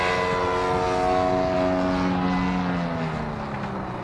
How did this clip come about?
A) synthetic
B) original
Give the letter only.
B